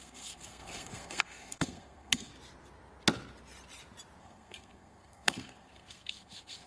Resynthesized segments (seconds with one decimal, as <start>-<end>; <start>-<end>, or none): 0.0-2.3; 4.2-6.7